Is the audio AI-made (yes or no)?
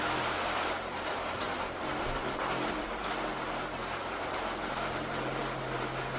yes